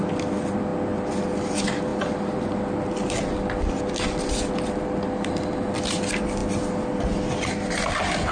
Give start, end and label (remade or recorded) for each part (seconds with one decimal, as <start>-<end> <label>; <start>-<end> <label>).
0.0-8.3 recorded